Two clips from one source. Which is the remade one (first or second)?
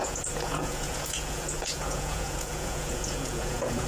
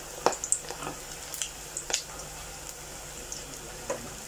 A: first